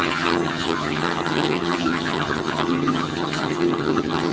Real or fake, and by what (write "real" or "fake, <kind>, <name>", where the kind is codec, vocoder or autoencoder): fake, vocoder, HiFi-GAN